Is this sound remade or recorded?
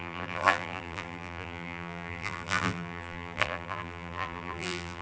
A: remade